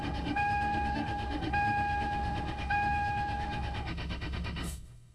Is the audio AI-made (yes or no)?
yes